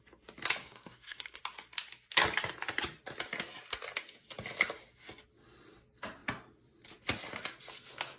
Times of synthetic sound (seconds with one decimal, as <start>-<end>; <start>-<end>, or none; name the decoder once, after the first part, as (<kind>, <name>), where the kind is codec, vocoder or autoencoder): 0.6-1.4 (codec, SNAC)